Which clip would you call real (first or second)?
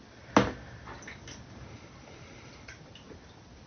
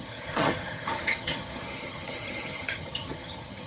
first